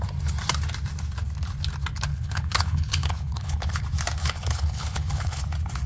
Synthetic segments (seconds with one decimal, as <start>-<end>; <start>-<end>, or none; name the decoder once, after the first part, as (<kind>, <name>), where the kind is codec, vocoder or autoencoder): 2.1-3.8 (codec, HILCodec); 4.2-5.4